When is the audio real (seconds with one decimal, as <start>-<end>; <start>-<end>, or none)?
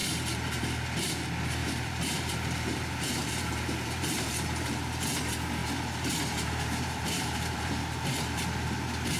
0.6-1.6; 5.0-5.6; 7.7-9.2